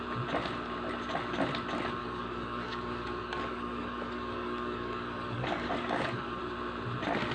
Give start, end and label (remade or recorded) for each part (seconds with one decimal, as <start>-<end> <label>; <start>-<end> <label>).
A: 0.0-2.0 recorded; 2.0-6.4 remade; 6.4-7.3 recorded